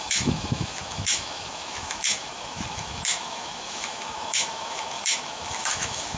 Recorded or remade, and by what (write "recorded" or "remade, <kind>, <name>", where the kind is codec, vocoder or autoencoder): remade, autoencoder, DAC-VAE